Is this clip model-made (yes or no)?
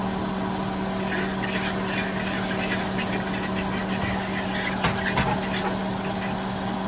no